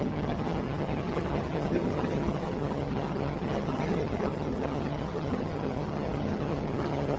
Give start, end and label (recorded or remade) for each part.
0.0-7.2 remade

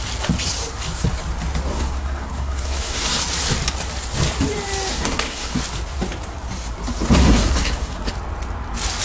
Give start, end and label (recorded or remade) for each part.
0.0-1.7 recorded; 1.7-3.2 remade; 3.2-4.9 recorded; 4.9-5.6 remade; 5.6-7.2 recorded; 7.2-8.1 remade; 8.1-9.0 recorded

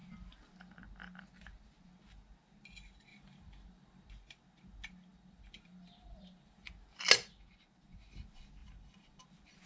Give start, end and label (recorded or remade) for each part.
0.0-3.1 recorded; 3.1-4.1 remade; 4.1-5.1 recorded; 5.1-6.7 remade; 6.7-8.6 recorded; 8.6-9.2 remade; 9.2-9.7 recorded

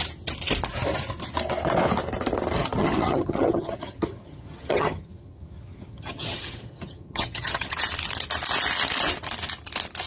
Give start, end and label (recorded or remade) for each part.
0.0-2.6 recorded; 2.6-7.8 remade; 7.8-10.1 recorded

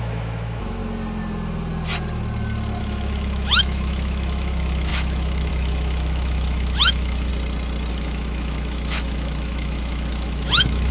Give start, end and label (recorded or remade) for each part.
0.0-0.8 remade; 0.8-2.8 recorded; 2.8-7.3 remade; 7.3-7.9 recorded; 7.9-10.9 remade

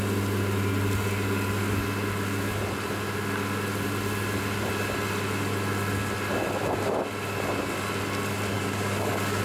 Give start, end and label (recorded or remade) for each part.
0.0-8.5 recorded; 8.5-9.4 remade

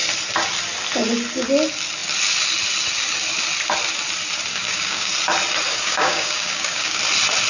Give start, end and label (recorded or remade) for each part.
0.0-4.5 recorded; 4.5-5.1 remade; 5.1-5.7 recorded; 5.7-7.0 remade; 7.0-7.5 recorded

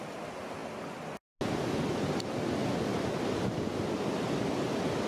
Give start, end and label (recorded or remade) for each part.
0.0-2.6 recorded; 2.6-3.8 remade; 3.8-5.1 recorded